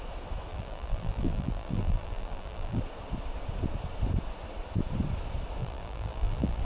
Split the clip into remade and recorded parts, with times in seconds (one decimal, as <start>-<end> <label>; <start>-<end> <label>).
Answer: 0.0-0.5 recorded; 0.5-2.8 remade; 2.8-5.6 recorded; 5.6-6.6 remade